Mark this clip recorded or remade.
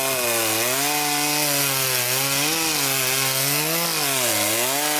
recorded